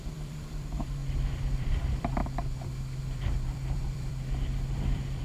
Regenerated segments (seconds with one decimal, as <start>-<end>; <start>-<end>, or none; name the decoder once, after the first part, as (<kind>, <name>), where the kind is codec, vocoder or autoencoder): 0.0-1.0 (vocoder, BigVGAN v2); 1.6-2.2; 3.0-5.2